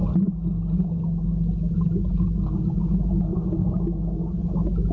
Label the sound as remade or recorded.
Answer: recorded